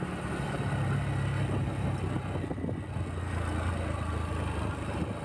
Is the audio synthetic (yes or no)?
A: no